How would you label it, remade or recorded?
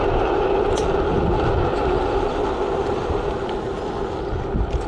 recorded